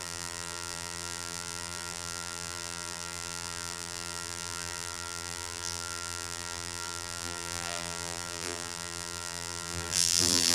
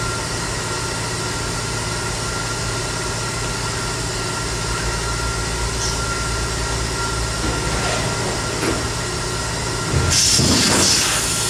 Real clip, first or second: second